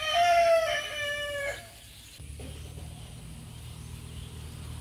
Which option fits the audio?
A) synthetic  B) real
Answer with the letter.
B